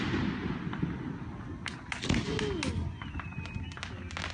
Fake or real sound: real